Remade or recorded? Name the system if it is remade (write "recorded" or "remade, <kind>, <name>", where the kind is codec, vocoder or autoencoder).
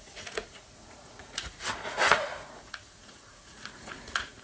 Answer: remade, vocoder, Vocos